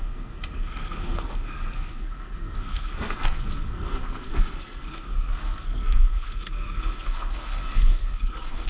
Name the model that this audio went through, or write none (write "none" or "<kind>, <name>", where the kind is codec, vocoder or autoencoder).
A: codec, SNAC